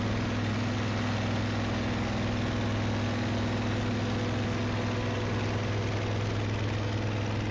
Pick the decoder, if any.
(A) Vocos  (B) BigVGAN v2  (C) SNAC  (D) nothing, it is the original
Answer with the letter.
D